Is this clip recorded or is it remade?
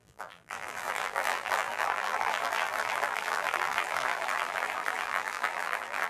remade